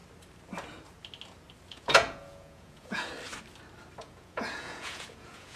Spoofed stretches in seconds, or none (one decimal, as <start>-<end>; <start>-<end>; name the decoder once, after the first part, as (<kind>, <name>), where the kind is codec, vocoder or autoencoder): 1.7-3.1 (vocoder, Vocos); 4.0-5.6